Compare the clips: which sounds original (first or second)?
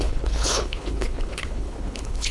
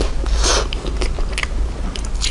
second